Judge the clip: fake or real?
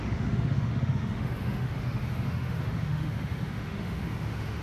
fake